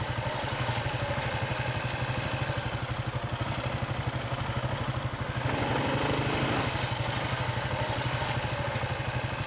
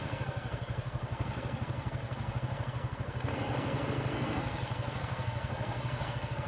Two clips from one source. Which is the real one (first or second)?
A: first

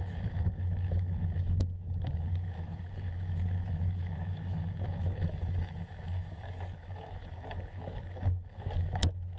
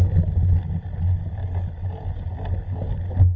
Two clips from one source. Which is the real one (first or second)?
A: second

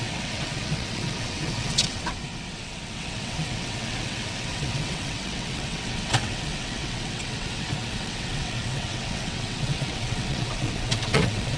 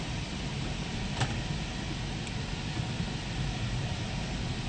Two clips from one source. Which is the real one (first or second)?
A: second